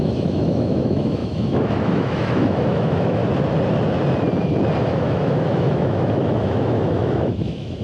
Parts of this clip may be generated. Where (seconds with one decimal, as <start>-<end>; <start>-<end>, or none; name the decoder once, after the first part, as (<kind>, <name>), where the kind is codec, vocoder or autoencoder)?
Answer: 0.0-3.2 (autoencoder, DAC-VAE); 4.8-7.8